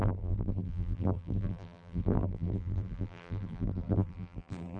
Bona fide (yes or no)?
no